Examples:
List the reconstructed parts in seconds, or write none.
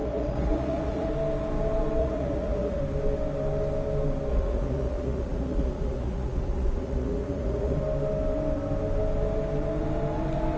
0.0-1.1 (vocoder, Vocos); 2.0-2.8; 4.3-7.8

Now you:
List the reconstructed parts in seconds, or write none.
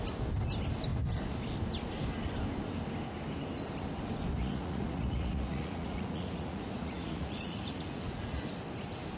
4.4-8.4 (vocoder, Vocos)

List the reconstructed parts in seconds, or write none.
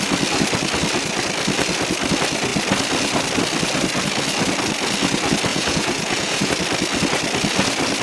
5.5-6.5 (vocoder, Vocos)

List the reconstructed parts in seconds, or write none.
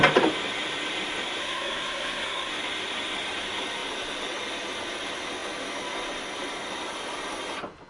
1.4-2.5 (codec, SNAC)